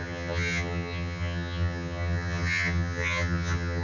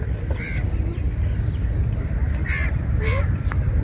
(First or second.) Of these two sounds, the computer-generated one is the first